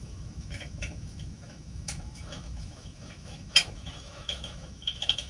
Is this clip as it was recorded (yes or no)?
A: no